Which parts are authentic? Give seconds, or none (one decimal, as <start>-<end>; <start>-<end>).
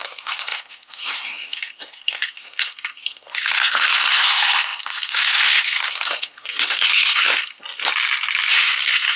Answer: 7.6-8.5